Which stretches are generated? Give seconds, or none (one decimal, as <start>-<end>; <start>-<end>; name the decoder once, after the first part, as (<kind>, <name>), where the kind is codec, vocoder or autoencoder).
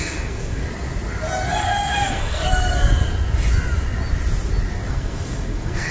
0.0-0.6 (codec, SNAC); 1.6-2.5; 4.9-5.9